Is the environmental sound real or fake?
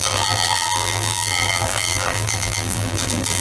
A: fake